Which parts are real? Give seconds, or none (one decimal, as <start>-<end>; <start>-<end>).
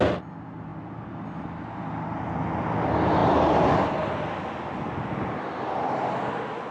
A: 0.0-6.7